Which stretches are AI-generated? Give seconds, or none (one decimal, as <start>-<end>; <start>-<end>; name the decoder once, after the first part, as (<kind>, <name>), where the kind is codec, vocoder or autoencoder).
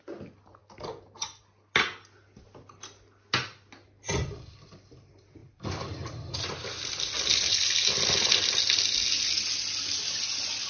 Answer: none